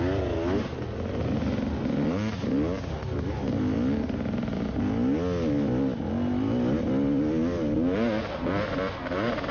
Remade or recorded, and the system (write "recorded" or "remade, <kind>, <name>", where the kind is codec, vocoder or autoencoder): recorded